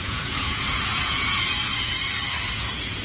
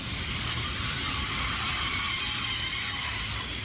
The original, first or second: second